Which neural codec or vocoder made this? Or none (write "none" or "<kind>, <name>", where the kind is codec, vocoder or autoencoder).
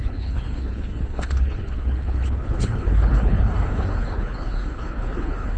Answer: codec, HILCodec